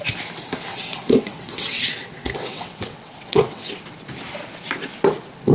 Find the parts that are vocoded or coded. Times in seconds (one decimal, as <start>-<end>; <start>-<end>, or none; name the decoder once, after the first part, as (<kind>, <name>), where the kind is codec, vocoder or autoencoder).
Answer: 0.7-3.8 (vocoder, WaveNeXt)

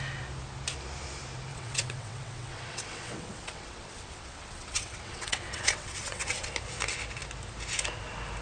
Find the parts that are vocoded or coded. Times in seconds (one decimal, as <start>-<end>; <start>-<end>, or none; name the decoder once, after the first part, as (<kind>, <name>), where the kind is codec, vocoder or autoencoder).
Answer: 1.5-6.5 (vocoder, WaveNeXt)

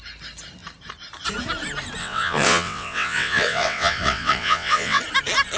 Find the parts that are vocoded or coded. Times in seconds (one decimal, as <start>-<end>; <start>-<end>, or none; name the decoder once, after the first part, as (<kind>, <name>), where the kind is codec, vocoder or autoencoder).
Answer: 2.0-5.0 (vocoder, WaveNeXt)

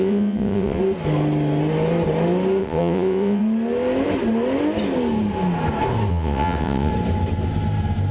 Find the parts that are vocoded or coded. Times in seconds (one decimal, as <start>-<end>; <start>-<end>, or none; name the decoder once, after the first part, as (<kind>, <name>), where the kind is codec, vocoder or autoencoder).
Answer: 0.0-0.8 (vocoder, WaveNeXt); 2.6-3.4; 6.1-6.9

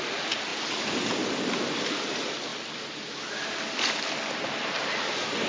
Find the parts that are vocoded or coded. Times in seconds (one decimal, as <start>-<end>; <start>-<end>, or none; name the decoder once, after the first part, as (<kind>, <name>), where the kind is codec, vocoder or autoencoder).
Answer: none

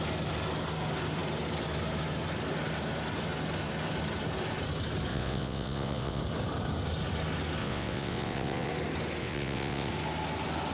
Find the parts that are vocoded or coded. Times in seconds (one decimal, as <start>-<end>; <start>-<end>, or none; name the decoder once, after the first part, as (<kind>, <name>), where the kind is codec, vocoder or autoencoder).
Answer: 5.1-6.2 (vocoder, WaveNeXt); 7.6-8.7; 9.2-9.9

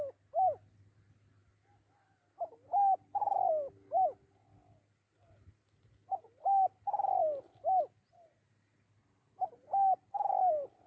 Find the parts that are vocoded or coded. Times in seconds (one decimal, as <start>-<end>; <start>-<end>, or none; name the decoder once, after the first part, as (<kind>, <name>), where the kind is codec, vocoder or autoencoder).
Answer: none